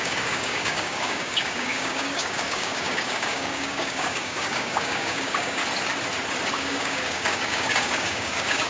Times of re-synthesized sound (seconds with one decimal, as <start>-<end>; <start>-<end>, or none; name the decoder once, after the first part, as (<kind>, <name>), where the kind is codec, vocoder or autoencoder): 0.0-5.6 (codec, DAC); 6.5-8.7